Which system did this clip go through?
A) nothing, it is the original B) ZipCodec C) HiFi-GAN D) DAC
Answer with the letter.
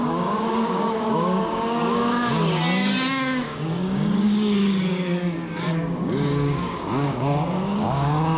D